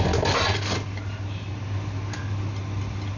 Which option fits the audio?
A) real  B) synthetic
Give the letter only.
A